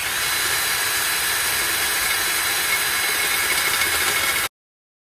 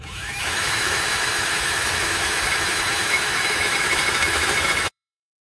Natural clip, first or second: first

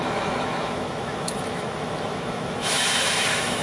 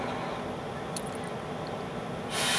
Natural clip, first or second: second